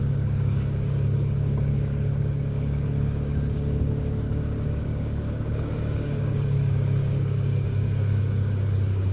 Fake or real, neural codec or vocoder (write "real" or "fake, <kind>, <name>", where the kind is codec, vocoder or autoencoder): fake, codec, DAC